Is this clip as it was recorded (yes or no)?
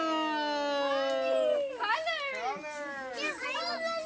yes